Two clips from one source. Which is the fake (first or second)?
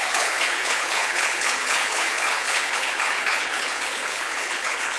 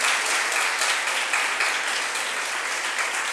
first